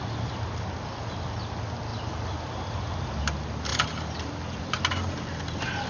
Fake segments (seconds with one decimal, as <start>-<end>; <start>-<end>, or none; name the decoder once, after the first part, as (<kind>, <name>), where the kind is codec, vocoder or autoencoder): 1.9-3.2 (vocoder, BigVGAN v2); 3.7-4.3